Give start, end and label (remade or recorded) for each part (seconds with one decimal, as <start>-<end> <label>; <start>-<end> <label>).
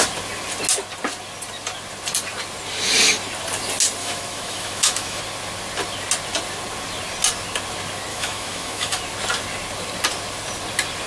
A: 0.0-4.0 recorded; 4.0-5.2 remade; 5.2-8.1 recorded; 8.1-9.0 remade; 9.0-11.1 recorded